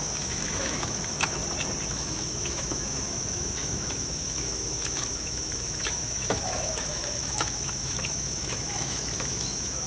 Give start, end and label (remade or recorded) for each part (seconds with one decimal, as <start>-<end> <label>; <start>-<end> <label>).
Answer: 0.0-1.4 remade; 1.4-1.9 recorded; 1.9-9.9 remade